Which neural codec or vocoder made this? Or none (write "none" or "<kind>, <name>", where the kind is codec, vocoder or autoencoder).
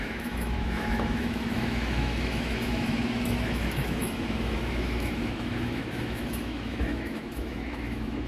autoencoder, DAC-VAE